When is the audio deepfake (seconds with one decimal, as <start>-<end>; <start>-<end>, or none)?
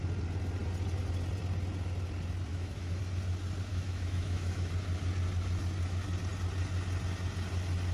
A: 2.5-3.0; 3.7-4.7